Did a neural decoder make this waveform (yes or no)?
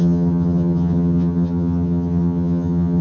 yes